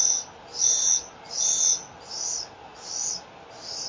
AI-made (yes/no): no